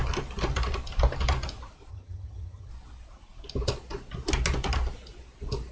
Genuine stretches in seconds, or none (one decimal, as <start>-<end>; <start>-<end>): 0.0-1.9; 2.7-5.7